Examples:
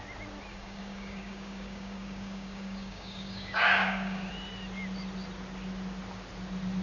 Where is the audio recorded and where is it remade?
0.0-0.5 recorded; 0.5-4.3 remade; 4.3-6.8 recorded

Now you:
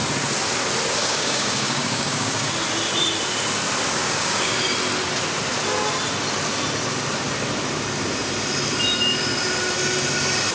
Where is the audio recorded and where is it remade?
0.0-1.0 recorded; 1.0-2.5 remade; 2.5-4.0 recorded; 4.0-4.6 remade; 4.6-10.5 recorded

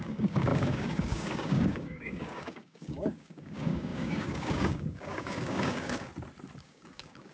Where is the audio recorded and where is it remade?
0.0-6.1 remade; 6.1-6.6 recorded; 6.6-7.3 remade

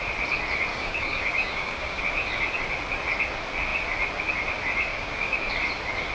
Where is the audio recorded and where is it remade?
0.0-0.7 recorded; 0.7-2.0 remade; 2.0-4.9 recorded; 4.9-5.5 remade; 5.5-6.1 recorded